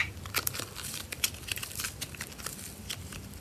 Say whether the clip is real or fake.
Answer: fake